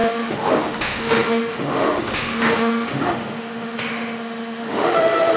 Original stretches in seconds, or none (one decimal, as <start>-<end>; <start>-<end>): none